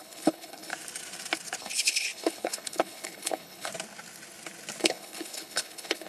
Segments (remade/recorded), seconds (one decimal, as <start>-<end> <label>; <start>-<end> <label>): 0.0-0.7 remade; 0.7-1.6 recorded; 1.6-3.7 remade; 3.7-4.8 recorded; 4.8-6.1 remade